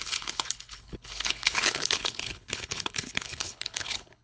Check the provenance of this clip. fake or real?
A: fake